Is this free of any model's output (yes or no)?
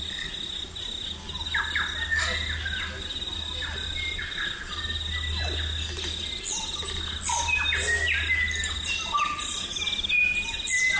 yes